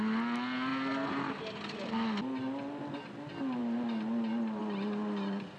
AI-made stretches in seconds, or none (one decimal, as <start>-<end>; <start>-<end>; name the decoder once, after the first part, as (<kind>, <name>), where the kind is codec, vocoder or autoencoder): none